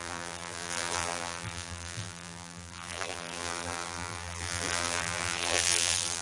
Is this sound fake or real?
fake